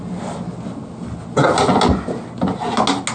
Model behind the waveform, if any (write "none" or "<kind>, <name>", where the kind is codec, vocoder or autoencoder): none